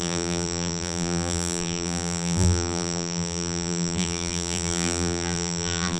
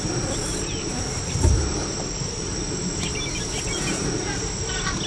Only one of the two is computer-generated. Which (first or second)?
first